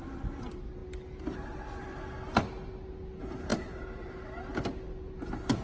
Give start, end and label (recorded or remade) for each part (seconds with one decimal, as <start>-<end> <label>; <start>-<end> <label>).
0.0-5.6 recorded